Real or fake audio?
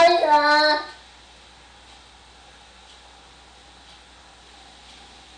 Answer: real